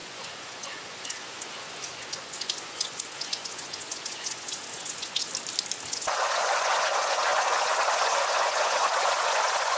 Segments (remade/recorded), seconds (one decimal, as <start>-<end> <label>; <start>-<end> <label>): 0.0-5.3 remade; 5.3-5.9 recorded; 5.9-9.8 remade